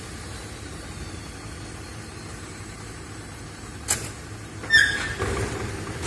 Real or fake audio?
real